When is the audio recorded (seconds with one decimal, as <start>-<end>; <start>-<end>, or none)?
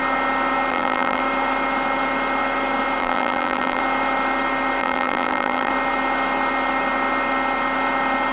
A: 0.0-0.7; 1.2-3.0; 3.8-4.8; 5.7-8.3